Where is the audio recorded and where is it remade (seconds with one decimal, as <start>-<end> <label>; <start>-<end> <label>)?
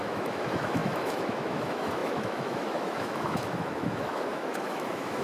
0.0-5.2 remade